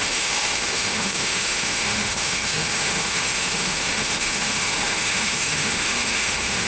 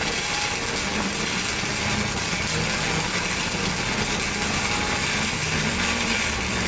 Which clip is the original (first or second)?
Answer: second